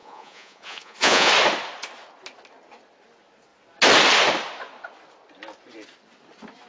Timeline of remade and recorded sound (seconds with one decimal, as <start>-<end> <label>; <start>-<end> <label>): 0.0-1.3 remade; 1.3-6.7 recorded